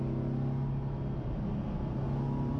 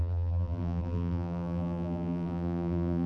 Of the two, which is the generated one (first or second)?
second